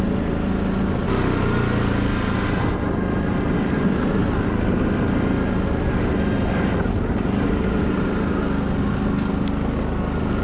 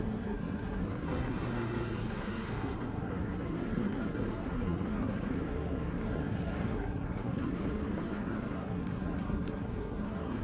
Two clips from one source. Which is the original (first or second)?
first